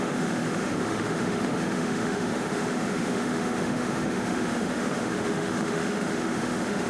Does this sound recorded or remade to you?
remade